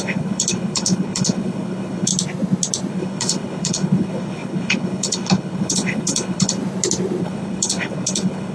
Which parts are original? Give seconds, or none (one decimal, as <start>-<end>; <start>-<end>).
2.1-2.9; 6.6-7.2